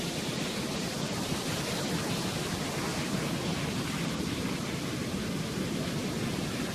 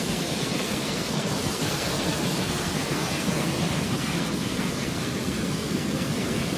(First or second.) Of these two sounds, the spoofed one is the second